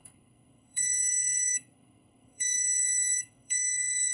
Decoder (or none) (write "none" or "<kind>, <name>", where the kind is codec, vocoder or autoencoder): codec, SNAC